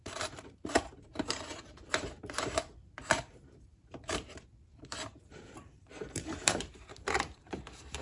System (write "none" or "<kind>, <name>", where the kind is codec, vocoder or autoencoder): vocoder, BigVGAN v2